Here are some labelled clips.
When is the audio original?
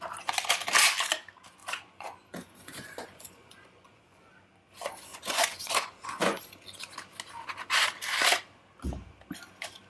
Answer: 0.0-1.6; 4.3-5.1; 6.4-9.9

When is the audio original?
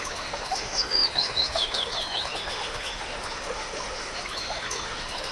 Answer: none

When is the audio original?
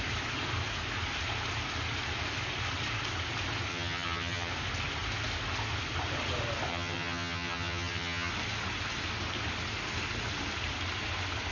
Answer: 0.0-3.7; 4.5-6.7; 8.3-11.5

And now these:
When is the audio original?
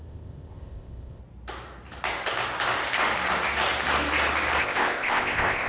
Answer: 1.2-4.6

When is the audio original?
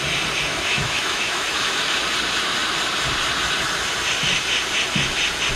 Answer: 0.0-0.5; 1.8-5.6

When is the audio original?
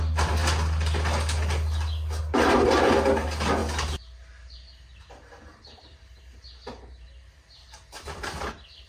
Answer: 0.0-8.9